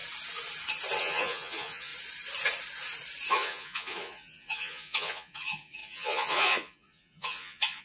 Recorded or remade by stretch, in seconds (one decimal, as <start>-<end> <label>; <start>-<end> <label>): 0.0-1.0 recorded; 1.0-1.9 remade; 1.9-3.3 recorded; 3.3-7.8 remade